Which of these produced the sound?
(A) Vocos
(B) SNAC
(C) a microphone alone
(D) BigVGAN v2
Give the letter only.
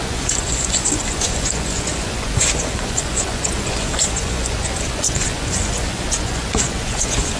A